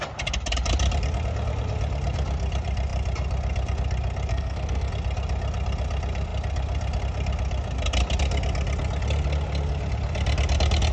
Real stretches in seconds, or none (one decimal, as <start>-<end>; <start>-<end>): 0.0-4.3; 4.9-10.9